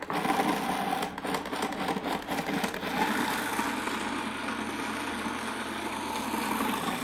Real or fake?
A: real